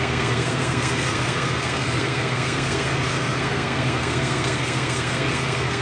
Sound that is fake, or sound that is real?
fake